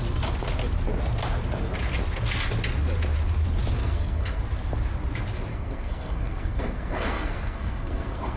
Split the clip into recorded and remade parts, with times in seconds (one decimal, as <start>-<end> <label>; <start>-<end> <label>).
0.0-3.8 recorded; 3.8-4.4 remade; 4.4-5.5 recorded; 5.5-8.4 remade